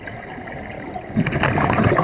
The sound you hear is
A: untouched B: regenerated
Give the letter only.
A